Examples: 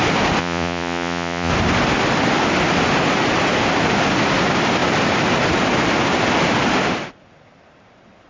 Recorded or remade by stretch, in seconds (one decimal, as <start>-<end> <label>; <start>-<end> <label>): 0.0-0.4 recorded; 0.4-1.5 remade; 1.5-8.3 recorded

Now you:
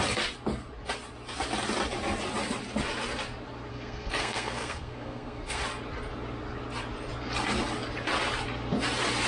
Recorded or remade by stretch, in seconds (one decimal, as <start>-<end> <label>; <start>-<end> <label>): 0.0-3.7 recorded; 3.7-5.6 remade; 5.6-9.3 recorded

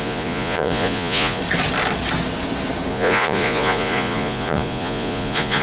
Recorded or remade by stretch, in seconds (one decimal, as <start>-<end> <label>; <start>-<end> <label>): 0.0-1.4 remade; 1.4-2.9 recorded; 2.9-5.6 remade

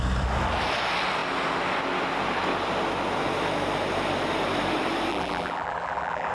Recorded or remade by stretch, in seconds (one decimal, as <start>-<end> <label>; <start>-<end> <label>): 0.0-5.1 recorded; 5.1-6.3 remade